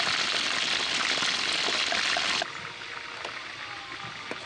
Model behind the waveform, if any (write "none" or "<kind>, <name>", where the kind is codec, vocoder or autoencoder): none